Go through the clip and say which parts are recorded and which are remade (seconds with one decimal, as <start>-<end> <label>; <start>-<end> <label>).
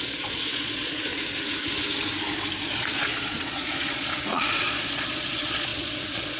0.0-1.1 remade; 1.1-2.7 recorded; 2.7-6.4 remade